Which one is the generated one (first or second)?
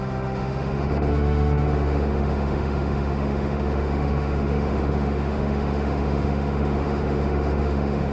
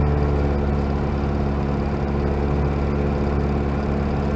first